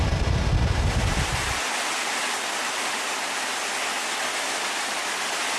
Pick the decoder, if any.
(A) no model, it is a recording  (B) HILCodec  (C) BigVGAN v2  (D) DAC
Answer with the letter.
A